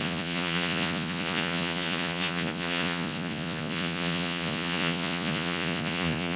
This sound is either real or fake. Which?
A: fake